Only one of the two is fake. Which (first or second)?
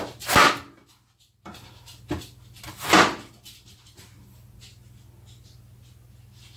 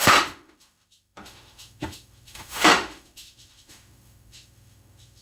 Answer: second